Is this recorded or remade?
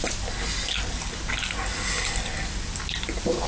recorded